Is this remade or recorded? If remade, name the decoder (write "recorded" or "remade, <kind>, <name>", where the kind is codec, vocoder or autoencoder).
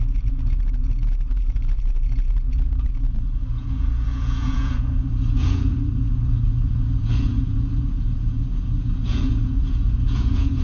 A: remade, vocoder, Vocos